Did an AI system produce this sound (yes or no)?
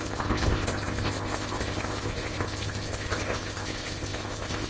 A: yes